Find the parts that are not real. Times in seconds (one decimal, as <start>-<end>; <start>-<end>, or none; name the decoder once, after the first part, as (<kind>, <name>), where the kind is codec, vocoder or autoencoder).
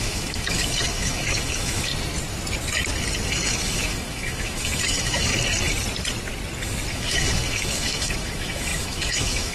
0.0-1.9 (autoencoder, DAC-VAE); 3.3-5.3; 6.9-9.5